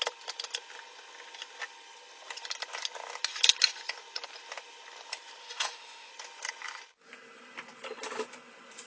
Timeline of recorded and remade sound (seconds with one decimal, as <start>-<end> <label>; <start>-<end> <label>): 0.0-5.4 recorded; 5.4-6.1 remade; 6.1-8.9 recorded